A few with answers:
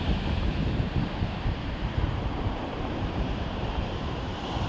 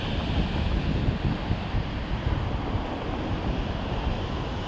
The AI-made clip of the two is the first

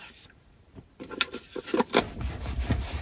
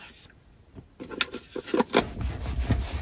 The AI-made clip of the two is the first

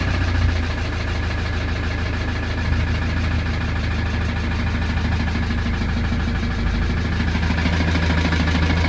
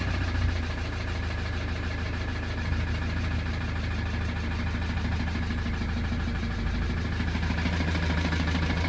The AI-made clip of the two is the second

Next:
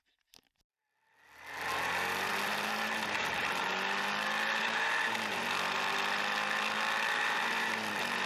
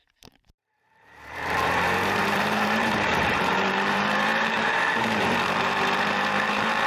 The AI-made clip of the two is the second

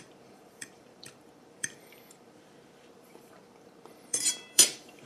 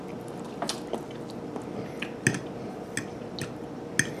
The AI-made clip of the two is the first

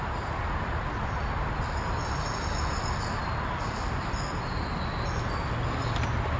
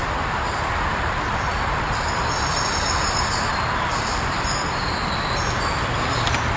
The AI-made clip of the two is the second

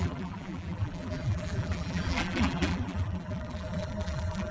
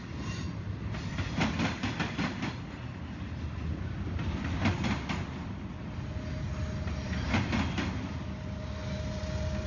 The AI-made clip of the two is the first